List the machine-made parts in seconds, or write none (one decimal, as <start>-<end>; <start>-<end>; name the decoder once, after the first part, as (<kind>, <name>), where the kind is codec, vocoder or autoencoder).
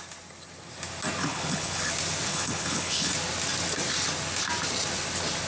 1.2-1.9 (codec, HILCodec); 2.3-3.1